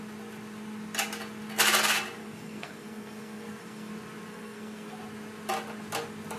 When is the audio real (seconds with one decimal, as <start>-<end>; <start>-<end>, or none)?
0.0-2.2; 3.9-4.3; 5.0-6.4